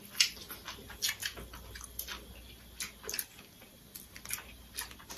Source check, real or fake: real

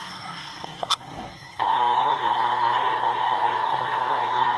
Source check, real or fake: fake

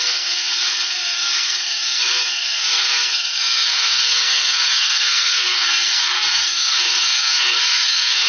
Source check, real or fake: fake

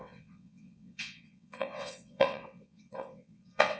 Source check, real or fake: fake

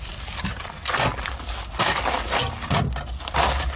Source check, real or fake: real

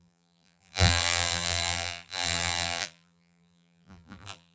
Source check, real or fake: fake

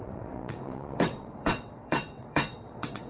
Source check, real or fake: fake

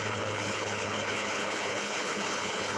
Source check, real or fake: fake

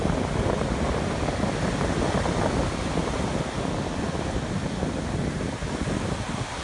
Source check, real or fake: real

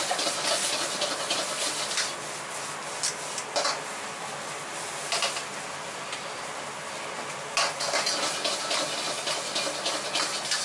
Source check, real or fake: real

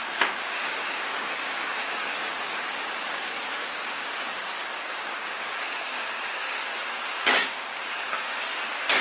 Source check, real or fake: fake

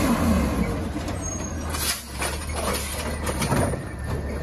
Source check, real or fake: real